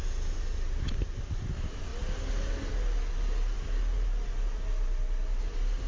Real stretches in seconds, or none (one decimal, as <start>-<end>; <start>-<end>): 0.0-5.9